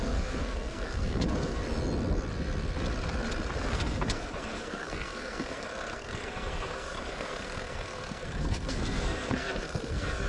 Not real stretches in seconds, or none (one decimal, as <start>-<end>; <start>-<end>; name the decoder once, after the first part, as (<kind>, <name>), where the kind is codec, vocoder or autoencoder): 0.0-1.6 (codec, SNAC); 3.6-10.3

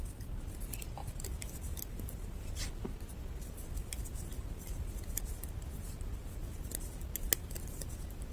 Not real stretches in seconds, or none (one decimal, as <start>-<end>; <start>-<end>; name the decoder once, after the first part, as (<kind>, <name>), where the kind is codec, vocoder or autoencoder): none